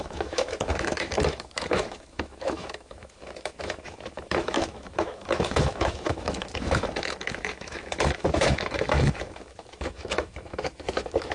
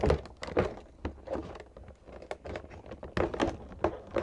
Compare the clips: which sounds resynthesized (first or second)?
first